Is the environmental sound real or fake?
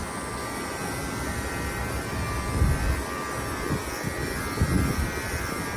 real